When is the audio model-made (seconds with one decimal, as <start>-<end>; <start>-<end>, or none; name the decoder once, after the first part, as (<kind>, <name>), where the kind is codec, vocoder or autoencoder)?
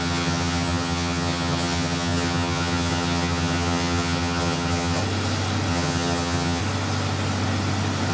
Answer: 0.0-5.0 (vocoder, HiFi-GAN); 5.7-6.6